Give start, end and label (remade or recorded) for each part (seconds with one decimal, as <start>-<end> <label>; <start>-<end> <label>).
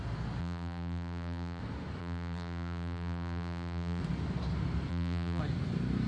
0.0-0.4 recorded; 0.4-1.6 remade; 1.6-2.0 recorded; 2.0-4.0 remade; 4.0-4.9 recorded; 4.9-5.4 remade; 5.4-6.1 recorded